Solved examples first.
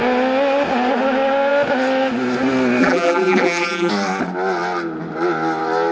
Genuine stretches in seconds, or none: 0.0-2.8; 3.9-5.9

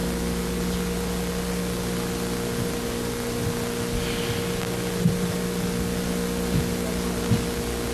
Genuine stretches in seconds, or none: 0.0-7.9